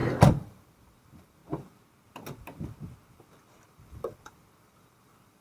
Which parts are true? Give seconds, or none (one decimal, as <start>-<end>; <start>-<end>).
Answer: 1.4-3.7